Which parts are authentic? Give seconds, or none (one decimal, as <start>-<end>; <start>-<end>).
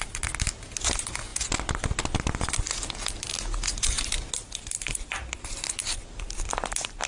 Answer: 0.0-7.1